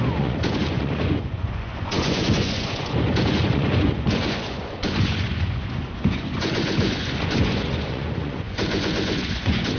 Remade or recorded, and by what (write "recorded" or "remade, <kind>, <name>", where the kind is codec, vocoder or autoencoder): remade, vocoder, Vocos